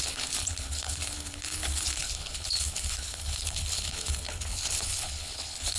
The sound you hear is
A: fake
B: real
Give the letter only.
A